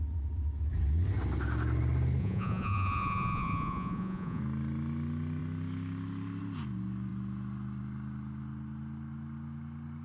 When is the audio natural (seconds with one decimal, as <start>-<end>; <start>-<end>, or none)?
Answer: 0.0-2.2; 4.4-10.0